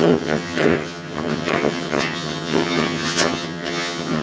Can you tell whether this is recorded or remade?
remade